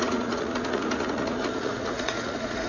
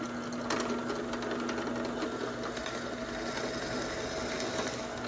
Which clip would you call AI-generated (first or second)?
first